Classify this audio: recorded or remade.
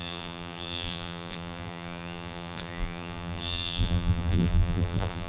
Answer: remade